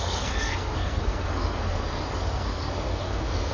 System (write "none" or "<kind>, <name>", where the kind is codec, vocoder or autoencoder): codec, SNAC